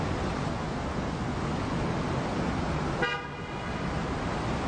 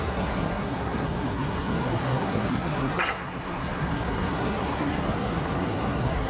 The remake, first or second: second